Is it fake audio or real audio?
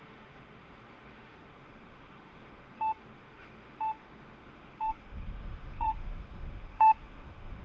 fake